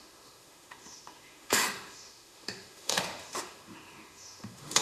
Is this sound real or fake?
fake